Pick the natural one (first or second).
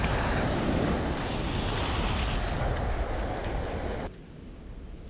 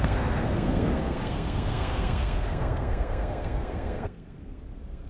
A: first